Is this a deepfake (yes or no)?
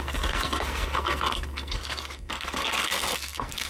yes